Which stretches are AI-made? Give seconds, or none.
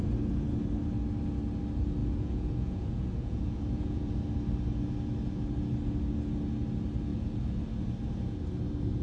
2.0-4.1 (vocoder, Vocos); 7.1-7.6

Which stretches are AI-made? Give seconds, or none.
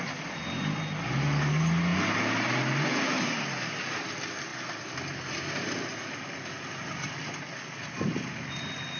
none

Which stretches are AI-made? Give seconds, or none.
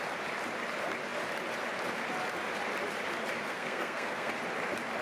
3.5-4.3 (codec, SNAC)